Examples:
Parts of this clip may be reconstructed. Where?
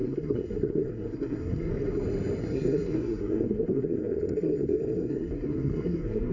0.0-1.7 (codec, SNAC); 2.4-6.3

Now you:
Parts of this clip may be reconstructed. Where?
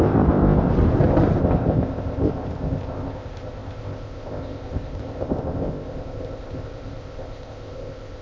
0.0-0.7 (codec, ZipCodec); 1.4-8.2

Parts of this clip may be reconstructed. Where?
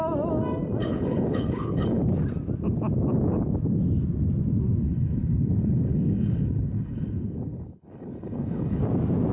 0.8-2.0 (codec, HILCodec); 4.8-8.8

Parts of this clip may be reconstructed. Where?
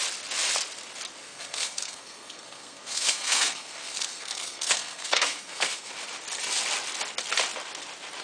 1.2-5.9 (codec, SNAC)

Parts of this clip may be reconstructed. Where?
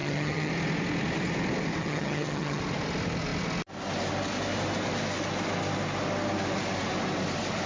0.0-0.5 (vocoder, HiFi-GAN); 1.8-2.6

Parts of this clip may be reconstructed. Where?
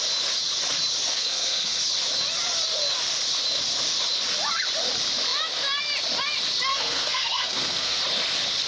1.1-1.8 (codec, SNAC); 6.7-8.0